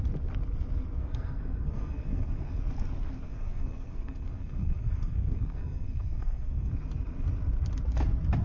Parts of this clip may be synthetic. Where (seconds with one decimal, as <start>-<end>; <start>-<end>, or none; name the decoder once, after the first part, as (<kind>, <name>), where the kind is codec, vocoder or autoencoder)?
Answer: 1.0-2.6 (codec, SNAC); 3.3-6.7

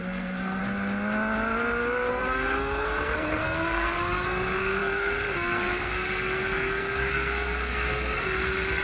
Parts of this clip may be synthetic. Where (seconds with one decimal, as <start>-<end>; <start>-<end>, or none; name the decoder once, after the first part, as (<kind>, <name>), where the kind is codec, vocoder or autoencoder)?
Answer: 0.0-0.6 (codec, SNAC); 2.1-8.8